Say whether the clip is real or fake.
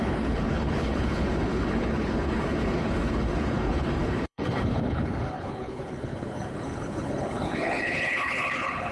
fake